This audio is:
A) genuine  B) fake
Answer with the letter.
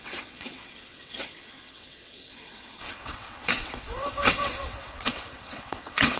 B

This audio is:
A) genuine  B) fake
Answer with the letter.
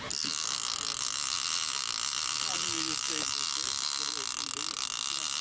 A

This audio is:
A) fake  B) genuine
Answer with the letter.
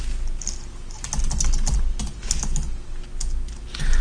B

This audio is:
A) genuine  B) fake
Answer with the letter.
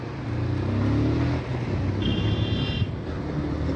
A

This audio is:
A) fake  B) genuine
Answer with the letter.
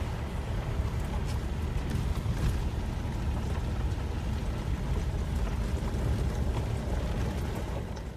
B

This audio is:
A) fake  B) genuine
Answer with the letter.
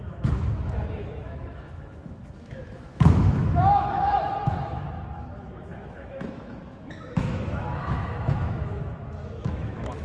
A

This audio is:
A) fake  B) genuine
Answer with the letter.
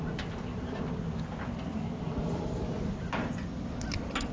B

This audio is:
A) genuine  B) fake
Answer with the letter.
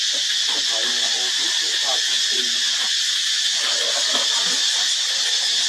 A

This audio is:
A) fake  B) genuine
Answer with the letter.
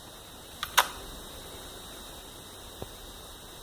B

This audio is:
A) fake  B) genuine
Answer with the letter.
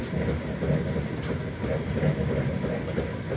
A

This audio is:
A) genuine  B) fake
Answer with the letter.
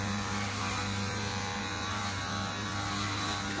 B